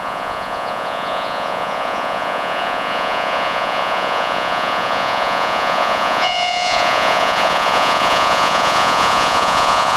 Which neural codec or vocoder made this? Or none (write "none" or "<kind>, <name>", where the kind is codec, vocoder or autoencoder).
vocoder, Vocos